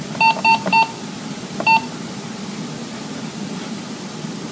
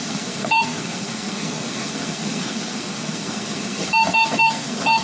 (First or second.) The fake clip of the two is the second